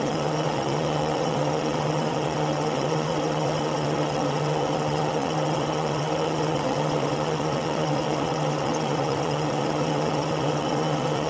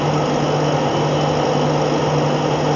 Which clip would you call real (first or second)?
second